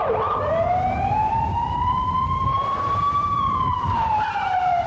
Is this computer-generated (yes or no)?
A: yes